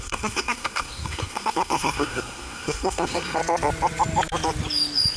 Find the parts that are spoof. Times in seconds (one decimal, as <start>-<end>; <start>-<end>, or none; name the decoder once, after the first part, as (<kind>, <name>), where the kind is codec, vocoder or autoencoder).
0.0-3.4 (codec, SNAC)